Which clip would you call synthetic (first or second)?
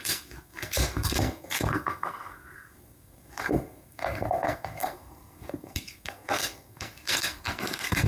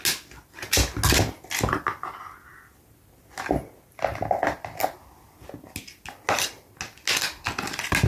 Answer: first